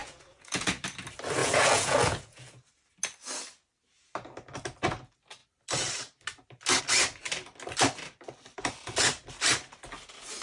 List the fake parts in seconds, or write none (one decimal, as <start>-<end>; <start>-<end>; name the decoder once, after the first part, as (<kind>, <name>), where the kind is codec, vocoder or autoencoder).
0.0-0.7 (vocoder, Vocos); 1.4-2.7

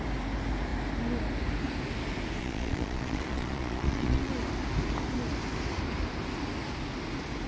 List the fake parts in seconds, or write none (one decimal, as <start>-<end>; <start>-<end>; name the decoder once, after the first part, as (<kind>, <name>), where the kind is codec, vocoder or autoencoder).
2.4-4.3 (vocoder, Vocos)

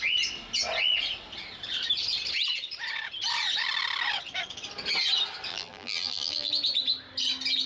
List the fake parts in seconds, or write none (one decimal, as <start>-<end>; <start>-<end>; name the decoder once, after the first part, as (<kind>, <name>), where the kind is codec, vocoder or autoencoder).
5.5-6.5 (vocoder, BigVGAN v2)

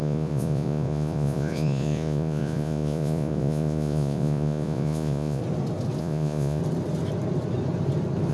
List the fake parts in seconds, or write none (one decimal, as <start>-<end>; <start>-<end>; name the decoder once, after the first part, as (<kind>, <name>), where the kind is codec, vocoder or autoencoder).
0.0-5.4 (vocoder, Vocos); 6.0-6.6